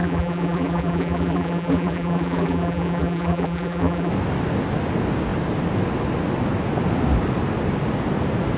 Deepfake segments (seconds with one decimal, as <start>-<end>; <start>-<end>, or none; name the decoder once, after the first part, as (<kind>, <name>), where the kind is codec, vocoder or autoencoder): 0.0-4.1 (vocoder, BigVGAN v2)